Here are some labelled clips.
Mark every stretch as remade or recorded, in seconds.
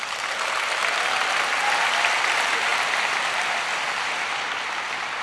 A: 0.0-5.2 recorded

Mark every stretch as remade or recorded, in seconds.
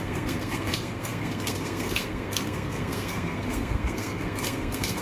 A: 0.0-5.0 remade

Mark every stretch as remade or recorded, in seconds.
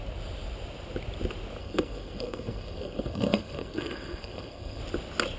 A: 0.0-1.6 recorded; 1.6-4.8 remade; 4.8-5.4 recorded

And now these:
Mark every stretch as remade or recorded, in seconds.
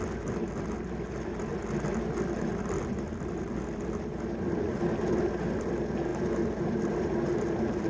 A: 0.0-7.9 recorded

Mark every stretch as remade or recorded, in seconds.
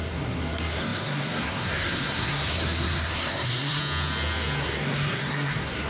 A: 0.0-3.8 remade; 3.8-4.6 recorded; 4.6-5.9 remade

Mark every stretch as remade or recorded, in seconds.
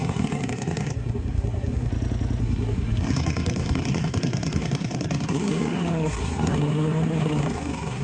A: 0.0-1.9 remade; 1.9-2.4 recorded; 2.4-8.0 remade